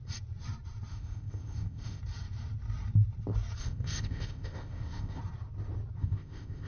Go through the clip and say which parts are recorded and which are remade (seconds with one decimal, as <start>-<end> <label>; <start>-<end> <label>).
0.0-0.9 recorded; 0.9-2.0 remade; 2.0-3.6 recorded; 3.6-5.2 remade; 5.2-6.0 recorded; 6.0-6.7 remade